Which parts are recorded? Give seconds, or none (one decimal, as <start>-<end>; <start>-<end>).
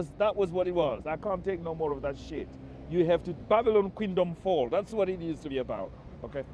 2.4-3.2; 4.9-5.5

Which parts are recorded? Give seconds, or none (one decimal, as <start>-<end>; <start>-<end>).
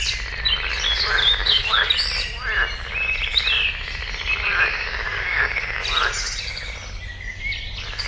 0.0-1.2; 1.9-4.7; 5.8-8.1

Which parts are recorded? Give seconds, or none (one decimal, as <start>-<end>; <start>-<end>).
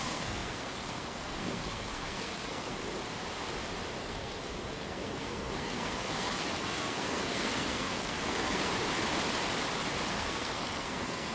2.8-4.0; 8.7-10.1